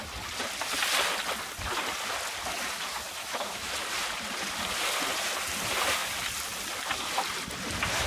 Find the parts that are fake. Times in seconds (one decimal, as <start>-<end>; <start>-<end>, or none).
3.2-3.7